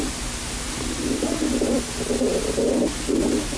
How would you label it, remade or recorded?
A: recorded